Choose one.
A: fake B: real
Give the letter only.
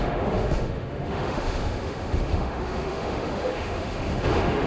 A